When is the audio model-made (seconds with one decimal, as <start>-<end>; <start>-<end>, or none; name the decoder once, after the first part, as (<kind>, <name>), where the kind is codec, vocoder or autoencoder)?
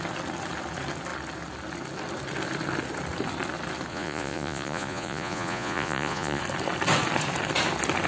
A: 3.9-6.4 (vocoder, Vocos)